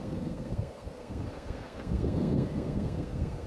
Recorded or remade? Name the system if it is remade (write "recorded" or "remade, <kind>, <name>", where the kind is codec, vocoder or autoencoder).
remade, codec, SNAC